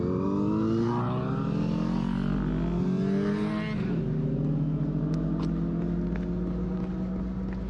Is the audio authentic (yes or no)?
yes